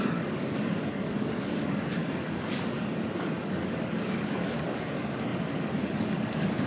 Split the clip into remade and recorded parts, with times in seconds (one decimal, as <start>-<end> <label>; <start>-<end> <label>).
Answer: 0.0-6.7 remade

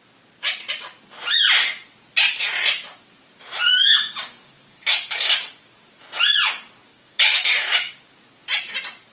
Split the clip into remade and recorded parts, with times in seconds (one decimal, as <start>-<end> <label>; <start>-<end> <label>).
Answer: 0.0-3.7 recorded; 3.7-5.3 remade; 5.3-6.9 recorded; 6.9-8.1 remade; 8.1-9.1 recorded

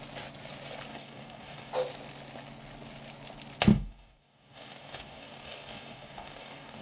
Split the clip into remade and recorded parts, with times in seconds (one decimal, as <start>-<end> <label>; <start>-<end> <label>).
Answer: 0.0-0.9 recorded; 0.9-1.7 remade; 1.7-3.7 recorded; 3.7-6.8 remade

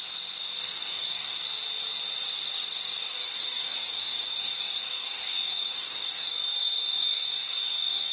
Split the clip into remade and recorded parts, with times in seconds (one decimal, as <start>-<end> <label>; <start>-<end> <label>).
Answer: 0.0-0.6 recorded; 0.6-1.4 remade; 1.4-3.0 recorded; 3.0-8.1 remade

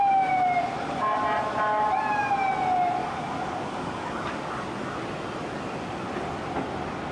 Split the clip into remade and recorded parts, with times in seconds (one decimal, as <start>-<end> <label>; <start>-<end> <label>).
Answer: 0.0-3.0 recorded; 3.0-4.6 remade; 4.6-7.1 recorded